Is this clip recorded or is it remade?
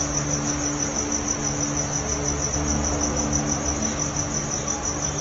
recorded